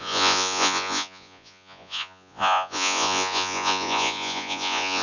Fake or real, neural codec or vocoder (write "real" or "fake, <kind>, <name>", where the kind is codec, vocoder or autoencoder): fake, vocoder, Vocos